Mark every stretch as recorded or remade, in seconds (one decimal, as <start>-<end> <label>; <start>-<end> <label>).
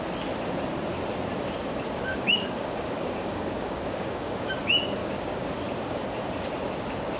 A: 0.0-2.1 recorded; 2.1-4.5 remade; 4.5-5.0 recorded; 5.0-5.5 remade; 5.5-7.2 recorded